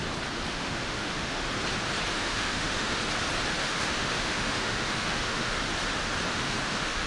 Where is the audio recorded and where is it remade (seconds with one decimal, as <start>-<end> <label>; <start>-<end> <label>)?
0.0-0.5 recorded; 0.5-1.4 remade; 1.4-2.1 recorded; 2.1-3.0 remade; 3.0-3.6 recorded; 3.6-5.6 remade; 5.6-6.3 recorded; 6.3-7.1 remade